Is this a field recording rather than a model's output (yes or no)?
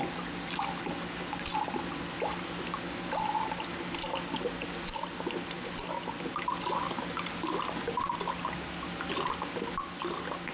yes